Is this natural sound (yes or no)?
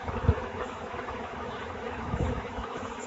no